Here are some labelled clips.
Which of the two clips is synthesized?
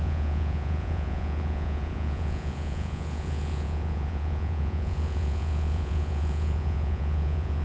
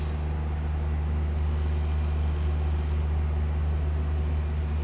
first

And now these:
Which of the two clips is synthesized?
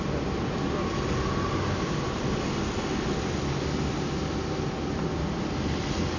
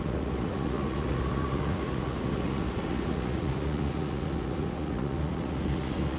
second